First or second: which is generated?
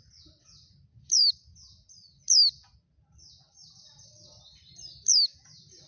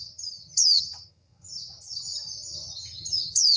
second